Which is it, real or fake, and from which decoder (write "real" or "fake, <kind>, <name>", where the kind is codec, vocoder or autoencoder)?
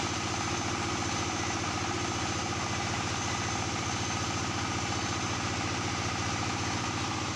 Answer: fake, vocoder, BigVGAN v2